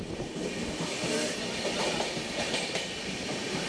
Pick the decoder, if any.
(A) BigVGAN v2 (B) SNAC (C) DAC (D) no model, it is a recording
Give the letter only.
D